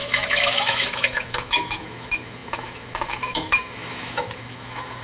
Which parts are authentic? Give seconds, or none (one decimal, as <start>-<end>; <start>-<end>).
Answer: none